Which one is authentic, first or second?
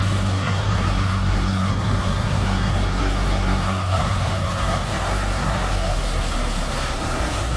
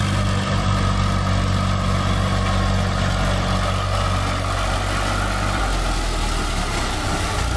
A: second